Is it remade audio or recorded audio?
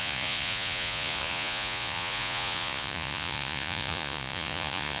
remade